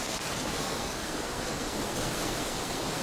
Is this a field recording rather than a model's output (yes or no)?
no